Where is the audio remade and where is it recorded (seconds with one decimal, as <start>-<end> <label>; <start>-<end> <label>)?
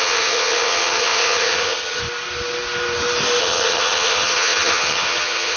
0.0-2.0 remade; 2.0-3.4 recorded; 3.4-5.6 remade